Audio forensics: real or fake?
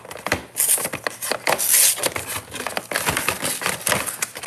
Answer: real